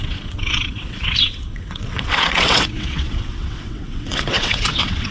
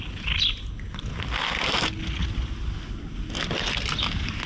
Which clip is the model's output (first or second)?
first